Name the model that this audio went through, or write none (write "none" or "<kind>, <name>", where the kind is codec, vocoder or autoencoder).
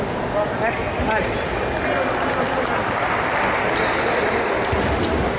none